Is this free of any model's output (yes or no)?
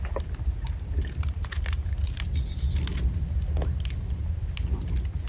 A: yes